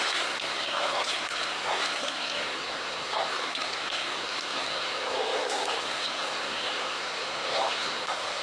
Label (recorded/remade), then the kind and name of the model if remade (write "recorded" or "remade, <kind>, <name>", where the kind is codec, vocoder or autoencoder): remade, codec, SNAC